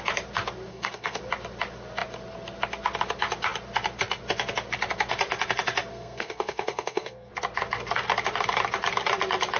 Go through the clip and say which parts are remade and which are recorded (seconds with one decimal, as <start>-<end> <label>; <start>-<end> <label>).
0.0-0.7 recorded; 0.7-1.2 remade; 1.2-5.9 recorded; 5.9-7.3 remade; 7.3-9.6 recorded